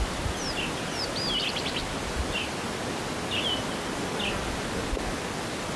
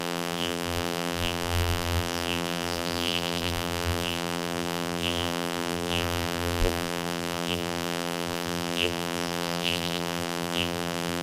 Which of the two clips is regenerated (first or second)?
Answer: second